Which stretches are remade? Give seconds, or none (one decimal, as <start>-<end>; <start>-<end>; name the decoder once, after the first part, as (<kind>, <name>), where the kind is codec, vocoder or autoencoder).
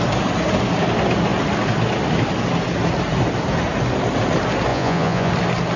4.7-5.3 (vocoder, Vocos)